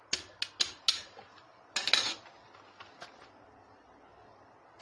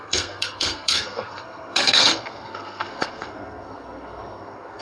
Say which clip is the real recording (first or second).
first